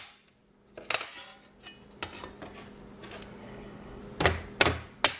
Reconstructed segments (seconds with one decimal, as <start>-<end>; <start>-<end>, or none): 3.4-4.0